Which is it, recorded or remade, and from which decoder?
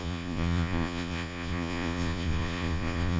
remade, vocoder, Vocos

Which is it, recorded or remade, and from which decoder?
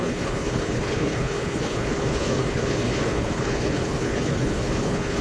remade, codec, HILCodec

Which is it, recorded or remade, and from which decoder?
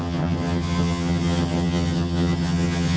remade, vocoder, HiFi-GAN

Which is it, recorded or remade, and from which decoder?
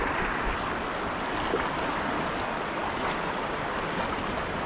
recorded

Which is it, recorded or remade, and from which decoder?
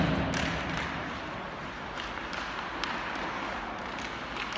recorded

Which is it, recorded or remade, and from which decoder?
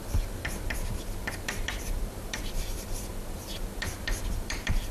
remade, vocoder, BigVGAN v2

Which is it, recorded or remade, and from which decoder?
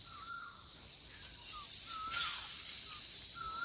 recorded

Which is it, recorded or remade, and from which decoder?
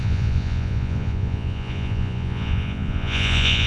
remade, vocoder, Vocos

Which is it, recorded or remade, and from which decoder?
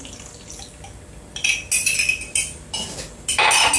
recorded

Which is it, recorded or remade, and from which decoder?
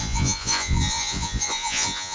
remade, vocoder, Vocos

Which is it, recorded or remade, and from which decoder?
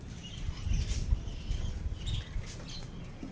recorded